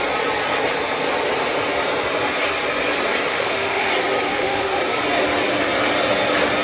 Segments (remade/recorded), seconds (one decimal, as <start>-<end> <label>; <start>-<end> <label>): 0.0-3.3 recorded; 3.3-3.9 remade; 3.9-4.3 recorded; 4.3-4.8 remade; 4.8-6.6 recorded